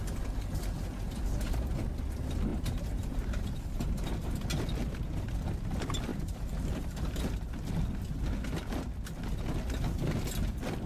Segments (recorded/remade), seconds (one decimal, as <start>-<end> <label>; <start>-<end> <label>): 0.0-2.5 recorded; 2.5-4.3 remade; 4.3-6.1 recorded; 6.1-7.2 remade; 7.2-10.9 recorded